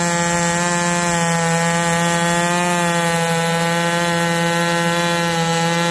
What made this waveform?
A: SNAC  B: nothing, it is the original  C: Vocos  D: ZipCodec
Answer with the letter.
B